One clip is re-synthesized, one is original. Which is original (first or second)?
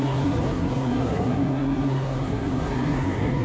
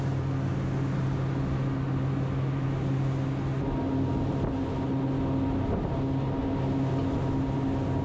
second